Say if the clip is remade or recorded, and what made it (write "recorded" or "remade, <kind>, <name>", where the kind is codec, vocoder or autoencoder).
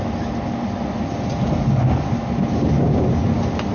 recorded